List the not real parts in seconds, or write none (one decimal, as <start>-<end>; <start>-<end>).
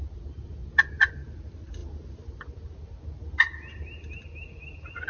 none